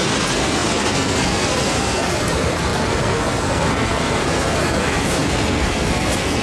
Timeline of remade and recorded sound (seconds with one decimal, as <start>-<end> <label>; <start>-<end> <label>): 0.0-6.4 remade